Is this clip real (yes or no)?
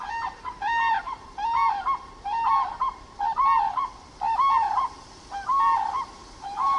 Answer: no